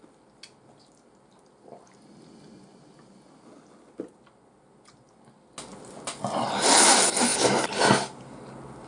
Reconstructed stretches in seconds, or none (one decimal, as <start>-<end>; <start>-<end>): none

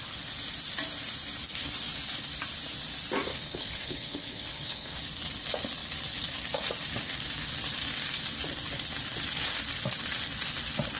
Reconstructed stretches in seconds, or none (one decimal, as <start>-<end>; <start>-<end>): 3.3-5.0

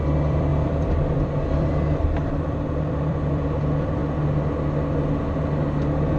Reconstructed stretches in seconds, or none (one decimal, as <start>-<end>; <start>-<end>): 0.0-4.0